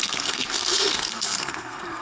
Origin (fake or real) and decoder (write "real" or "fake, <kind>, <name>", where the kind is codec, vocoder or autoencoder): fake, codec, SNAC